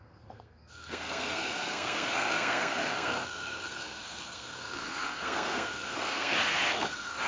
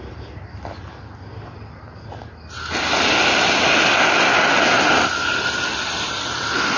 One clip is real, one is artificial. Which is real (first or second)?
second